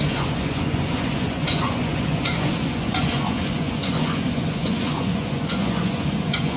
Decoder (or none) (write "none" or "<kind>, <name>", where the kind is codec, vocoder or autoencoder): vocoder, Vocos